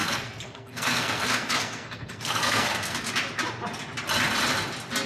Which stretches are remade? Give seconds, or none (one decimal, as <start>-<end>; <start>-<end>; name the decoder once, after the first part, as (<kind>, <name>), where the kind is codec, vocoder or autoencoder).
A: 0.0-3.1 (codec, SNAC)